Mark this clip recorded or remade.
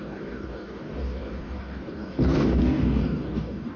remade